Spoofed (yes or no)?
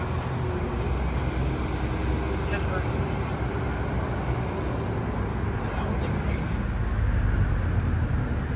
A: no